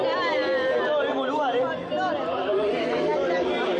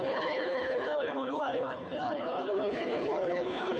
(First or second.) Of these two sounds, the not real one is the second